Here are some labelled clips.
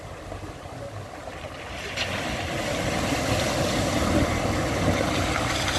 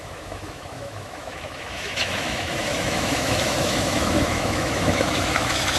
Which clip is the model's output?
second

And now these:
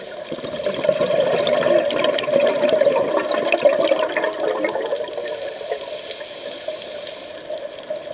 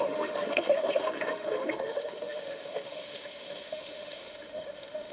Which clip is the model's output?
second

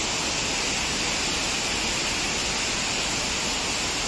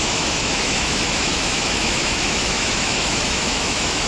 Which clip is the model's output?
second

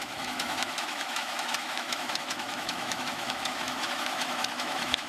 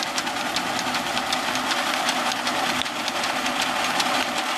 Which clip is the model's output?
first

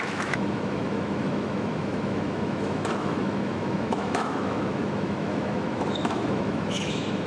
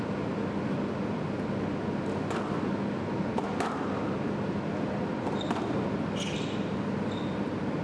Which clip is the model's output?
first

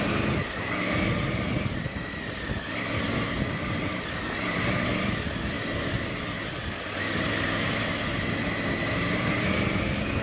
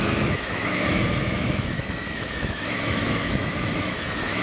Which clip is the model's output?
second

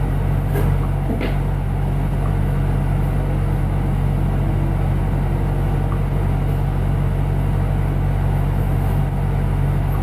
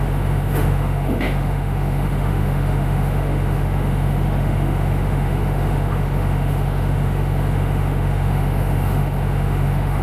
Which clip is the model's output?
second